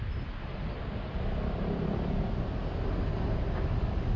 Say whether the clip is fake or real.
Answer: real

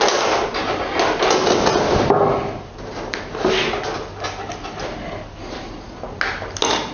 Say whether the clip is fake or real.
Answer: real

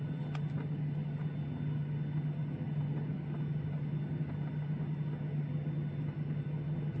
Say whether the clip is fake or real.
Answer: real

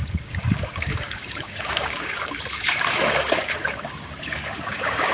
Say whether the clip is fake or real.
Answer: fake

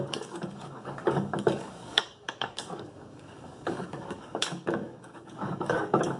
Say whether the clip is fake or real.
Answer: fake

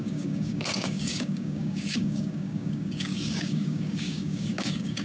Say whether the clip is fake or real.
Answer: fake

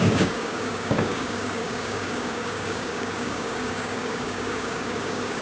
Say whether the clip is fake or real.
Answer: fake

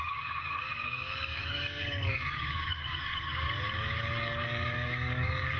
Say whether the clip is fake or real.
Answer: fake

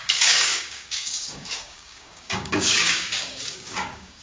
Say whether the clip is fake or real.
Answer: fake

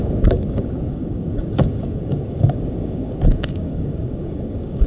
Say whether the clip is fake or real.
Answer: fake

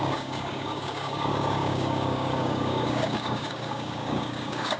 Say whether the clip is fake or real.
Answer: fake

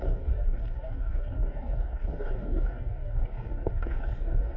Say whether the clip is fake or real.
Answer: fake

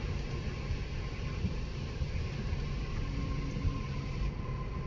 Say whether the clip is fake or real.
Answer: real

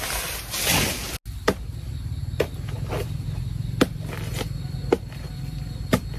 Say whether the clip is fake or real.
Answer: real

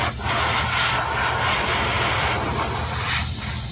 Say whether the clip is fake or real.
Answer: real